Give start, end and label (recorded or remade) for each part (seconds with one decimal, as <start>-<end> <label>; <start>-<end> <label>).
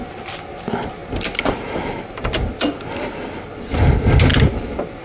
0.0-5.0 recorded